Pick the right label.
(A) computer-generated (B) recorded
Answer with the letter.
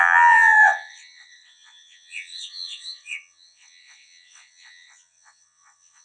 A